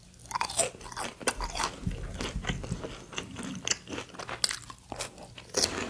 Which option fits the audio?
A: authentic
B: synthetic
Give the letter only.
A